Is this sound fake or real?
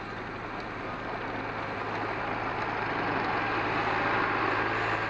real